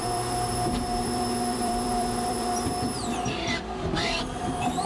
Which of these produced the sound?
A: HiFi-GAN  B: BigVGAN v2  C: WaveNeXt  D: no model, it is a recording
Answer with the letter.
B